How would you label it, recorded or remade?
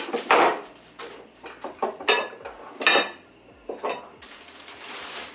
remade